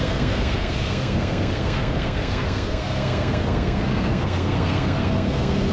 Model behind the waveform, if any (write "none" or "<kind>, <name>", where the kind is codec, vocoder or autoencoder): codec, SNAC